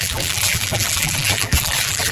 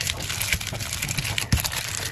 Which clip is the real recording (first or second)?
second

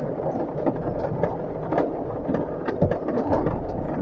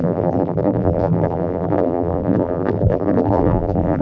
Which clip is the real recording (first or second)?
first